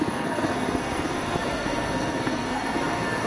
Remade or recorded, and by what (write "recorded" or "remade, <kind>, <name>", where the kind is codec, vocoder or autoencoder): remade, codec, SNAC